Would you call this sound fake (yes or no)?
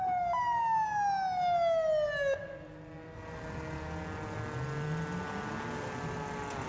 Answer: no